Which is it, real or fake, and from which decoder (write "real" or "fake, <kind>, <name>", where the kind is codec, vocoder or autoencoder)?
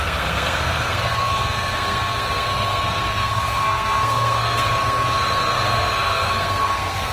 fake, codec, SNAC